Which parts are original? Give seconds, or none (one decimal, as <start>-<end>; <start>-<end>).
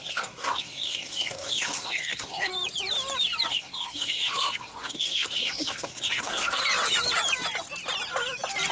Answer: 2.5-3.5; 6.6-8.7